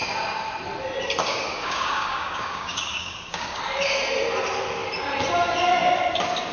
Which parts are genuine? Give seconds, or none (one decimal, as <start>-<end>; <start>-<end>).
0.0-1.3; 3.6-6.5